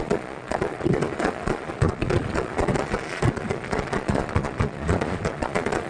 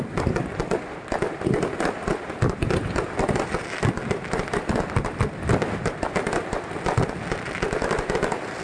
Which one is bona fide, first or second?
second